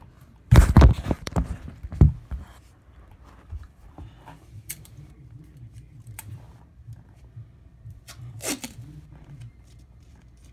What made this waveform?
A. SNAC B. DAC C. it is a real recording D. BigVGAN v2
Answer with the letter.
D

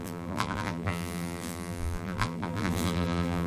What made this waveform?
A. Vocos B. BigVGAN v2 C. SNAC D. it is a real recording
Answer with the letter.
B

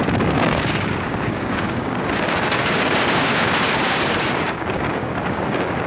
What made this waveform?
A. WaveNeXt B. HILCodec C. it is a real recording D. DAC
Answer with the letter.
D